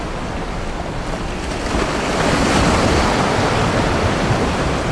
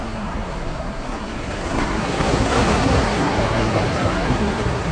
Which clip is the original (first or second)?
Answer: first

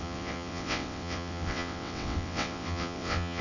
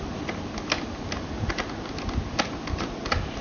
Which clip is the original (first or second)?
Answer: second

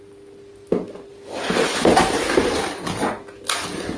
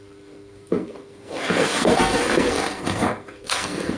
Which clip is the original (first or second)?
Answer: first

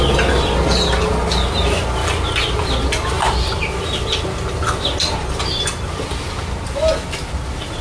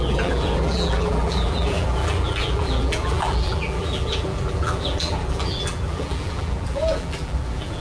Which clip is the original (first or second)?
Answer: first